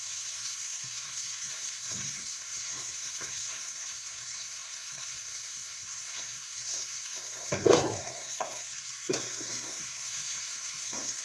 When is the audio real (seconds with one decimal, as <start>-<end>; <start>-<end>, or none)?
none